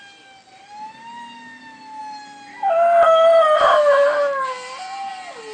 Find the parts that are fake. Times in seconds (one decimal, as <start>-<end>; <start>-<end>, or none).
none